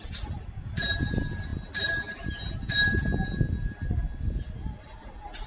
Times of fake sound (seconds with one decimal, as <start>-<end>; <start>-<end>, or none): none